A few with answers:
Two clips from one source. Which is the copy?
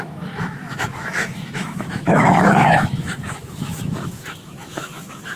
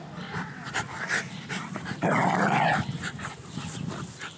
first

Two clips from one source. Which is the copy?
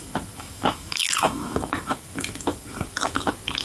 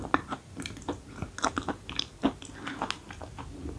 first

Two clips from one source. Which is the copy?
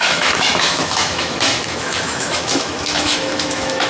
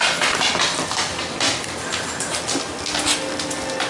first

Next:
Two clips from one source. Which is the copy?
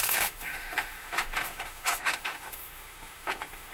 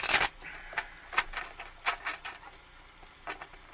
first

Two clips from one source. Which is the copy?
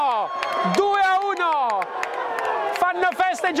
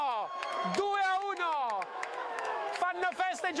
second